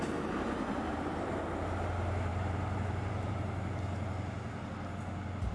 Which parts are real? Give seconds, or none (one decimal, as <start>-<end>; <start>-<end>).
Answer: 0.0-0.9; 1.4-2.3; 3.3-5.5